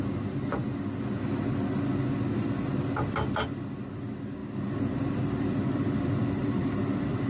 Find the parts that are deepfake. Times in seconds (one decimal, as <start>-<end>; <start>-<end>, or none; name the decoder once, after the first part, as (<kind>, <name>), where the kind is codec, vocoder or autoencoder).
4.4-7.3 (vocoder, BigVGAN v2)